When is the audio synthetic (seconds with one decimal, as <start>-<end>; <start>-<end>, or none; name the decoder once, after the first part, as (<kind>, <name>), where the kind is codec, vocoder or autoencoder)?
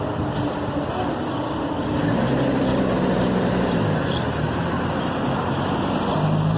none